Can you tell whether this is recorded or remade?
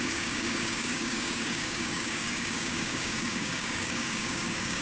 remade